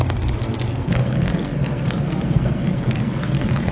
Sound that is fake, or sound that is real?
fake